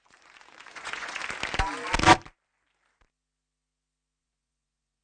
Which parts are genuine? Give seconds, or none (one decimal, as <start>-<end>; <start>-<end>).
1.2-4.2